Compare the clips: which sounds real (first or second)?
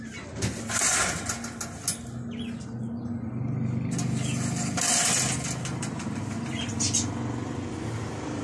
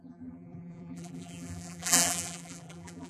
first